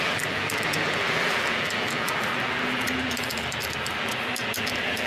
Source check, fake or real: fake